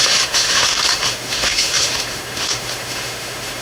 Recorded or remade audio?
remade